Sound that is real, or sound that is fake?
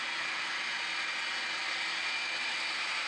real